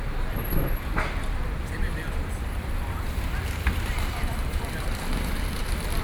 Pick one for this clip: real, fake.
fake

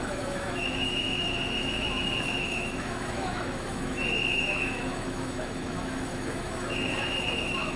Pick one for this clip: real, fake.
fake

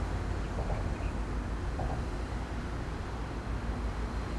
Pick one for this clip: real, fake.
real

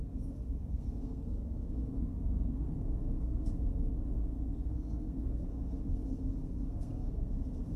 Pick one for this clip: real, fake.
fake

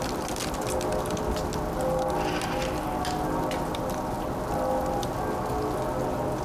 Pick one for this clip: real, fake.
real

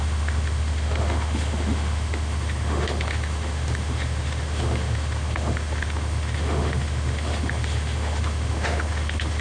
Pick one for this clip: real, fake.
fake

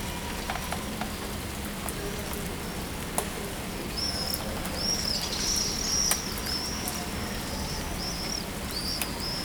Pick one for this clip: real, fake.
real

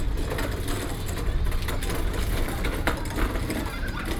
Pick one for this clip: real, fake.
real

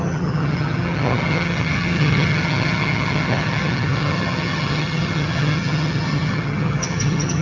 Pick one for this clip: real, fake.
fake